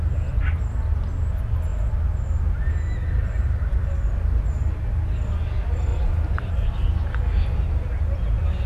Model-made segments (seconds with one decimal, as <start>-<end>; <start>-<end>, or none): 5.9-6.5